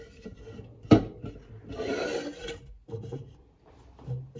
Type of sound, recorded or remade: recorded